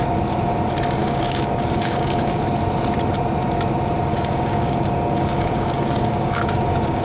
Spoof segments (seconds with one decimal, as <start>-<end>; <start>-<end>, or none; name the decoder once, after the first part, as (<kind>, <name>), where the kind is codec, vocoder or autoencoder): 1.0-2.4 (codec, DAC); 4.1-7.0